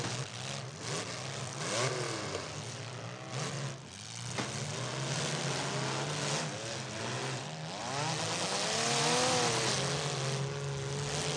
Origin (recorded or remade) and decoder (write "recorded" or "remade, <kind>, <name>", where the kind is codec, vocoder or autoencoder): recorded